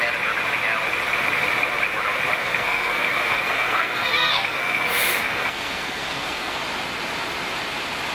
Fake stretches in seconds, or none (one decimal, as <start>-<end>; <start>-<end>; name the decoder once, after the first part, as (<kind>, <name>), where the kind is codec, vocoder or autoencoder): 2.4-6.6 (codec, SNAC)